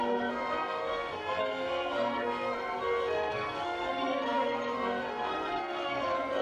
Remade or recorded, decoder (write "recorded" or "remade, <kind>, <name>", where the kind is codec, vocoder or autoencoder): remade, codec, SNAC